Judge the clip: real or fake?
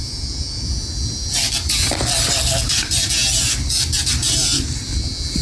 fake